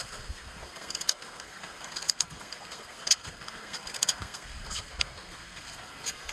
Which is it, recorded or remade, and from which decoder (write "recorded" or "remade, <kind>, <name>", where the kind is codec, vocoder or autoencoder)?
remade, codec, SNAC